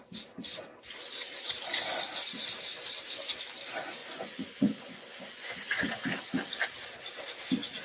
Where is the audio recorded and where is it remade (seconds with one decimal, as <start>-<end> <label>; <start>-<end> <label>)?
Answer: 0.0-4.0 recorded; 4.0-5.9 remade; 5.9-7.8 recorded

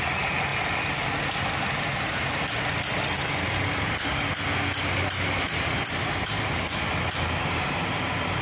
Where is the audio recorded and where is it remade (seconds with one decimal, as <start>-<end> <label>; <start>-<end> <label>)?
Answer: 0.0-8.4 recorded

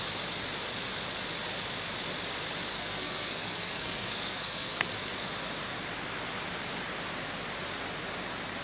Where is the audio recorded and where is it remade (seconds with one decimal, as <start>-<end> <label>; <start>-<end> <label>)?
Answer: 0.0-2.7 recorded; 2.7-4.9 remade; 4.9-8.6 recorded

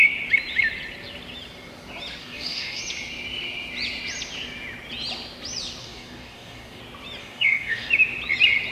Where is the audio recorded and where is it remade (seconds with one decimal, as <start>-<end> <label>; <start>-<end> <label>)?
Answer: 0.0-2.2 recorded; 2.2-2.8 remade; 2.8-5.8 recorded; 5.8-6.8 remade; 6.8-7.2 recorded; 7.2-7.9 remade; 7.9-8.7 recorded

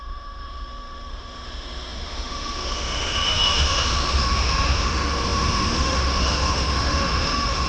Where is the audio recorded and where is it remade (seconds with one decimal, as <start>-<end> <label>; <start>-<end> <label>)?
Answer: 0.0-7.7 remade

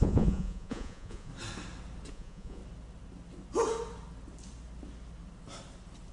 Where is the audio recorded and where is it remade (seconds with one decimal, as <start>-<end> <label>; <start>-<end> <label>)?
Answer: 0.0-1.3 remade; 1.3-2.1 recorded; 2.1-2.6 remade; 2.6-6.1 recorded

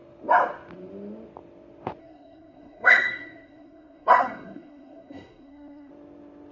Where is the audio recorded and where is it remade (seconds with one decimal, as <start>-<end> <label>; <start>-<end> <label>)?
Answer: 0.0-2.0 recorded; 2.0-5.9 remade; 5.9-6.5 recorded